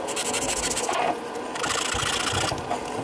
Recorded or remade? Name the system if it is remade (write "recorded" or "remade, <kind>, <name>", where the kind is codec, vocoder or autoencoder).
recorded